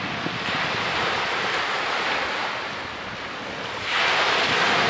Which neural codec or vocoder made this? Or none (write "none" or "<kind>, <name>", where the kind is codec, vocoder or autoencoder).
none